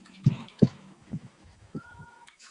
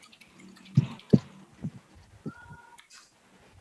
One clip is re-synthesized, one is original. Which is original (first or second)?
second